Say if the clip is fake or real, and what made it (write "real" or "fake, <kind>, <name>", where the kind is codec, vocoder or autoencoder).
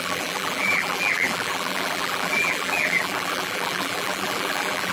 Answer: fake, vocoder, BigVGAN v2